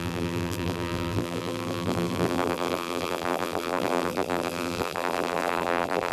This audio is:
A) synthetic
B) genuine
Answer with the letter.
A